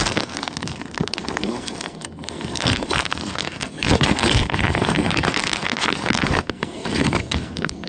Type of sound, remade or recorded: remade